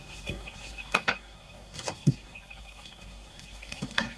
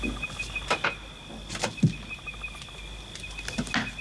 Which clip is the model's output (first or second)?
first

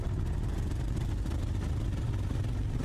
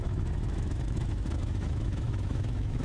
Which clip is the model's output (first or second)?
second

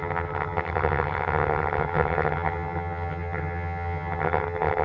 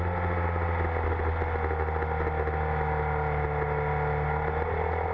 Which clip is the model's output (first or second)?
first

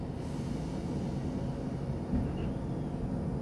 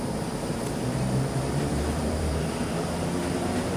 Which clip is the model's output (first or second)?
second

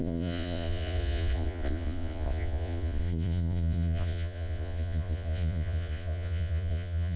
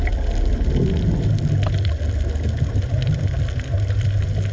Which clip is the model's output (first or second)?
first